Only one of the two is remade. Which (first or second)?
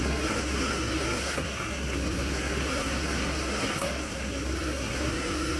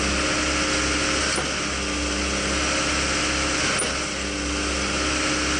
first